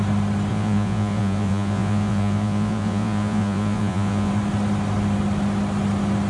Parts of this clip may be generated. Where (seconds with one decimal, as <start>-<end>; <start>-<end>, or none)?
0.5-4.3